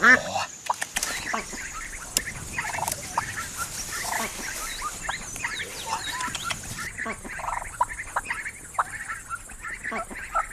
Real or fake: real